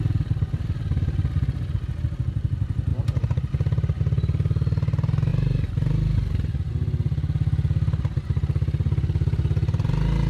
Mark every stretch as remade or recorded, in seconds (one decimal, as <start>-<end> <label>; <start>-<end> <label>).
0.0-2.9 recorded; 2.9-3.5 remade; 3.5-10.3 recorded